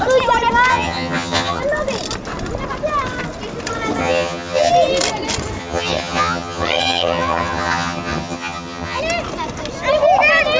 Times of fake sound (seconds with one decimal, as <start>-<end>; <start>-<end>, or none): 0.7-1.6; 4.0-4.7; 5.6-9.0